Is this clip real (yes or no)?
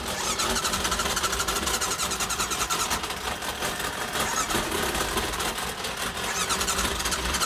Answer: no